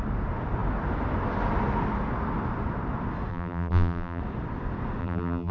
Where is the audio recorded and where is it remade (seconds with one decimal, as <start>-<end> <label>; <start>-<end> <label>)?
0.0-3.3 recorded; 3.3-4.2 remade; 4.2-5.0 recorded; 5.0-5.5 remade